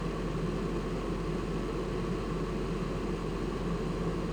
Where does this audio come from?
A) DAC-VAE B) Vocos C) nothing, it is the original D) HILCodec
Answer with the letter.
C